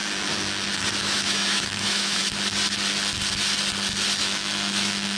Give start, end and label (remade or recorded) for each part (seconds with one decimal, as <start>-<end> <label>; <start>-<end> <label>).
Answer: 0.0-1.0 recorded; 1.0-2.2 remade; 2.2-4.2 recorded; 4.2-5.2 remade